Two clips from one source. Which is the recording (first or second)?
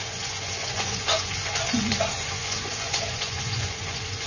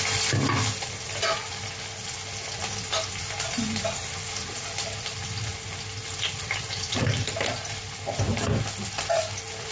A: second